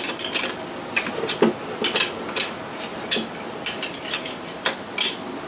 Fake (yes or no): no